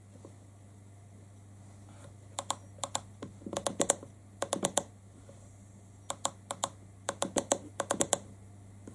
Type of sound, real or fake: real